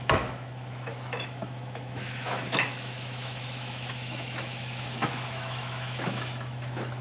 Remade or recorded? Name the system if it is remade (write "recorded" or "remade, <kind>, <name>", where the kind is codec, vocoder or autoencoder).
remade, autoencoder, DAC-VAE